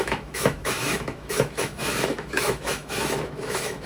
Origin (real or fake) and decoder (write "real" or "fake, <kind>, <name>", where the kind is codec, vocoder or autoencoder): fake, autoencoder, DAC-VAE